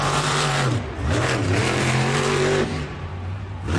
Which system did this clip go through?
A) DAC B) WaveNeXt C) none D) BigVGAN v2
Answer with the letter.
D